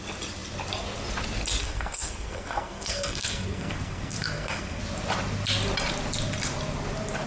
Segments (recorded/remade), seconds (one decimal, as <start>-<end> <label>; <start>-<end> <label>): 0.0-1.6 recorded; 1.6-4.8 remade; 4.8-7.3 recorded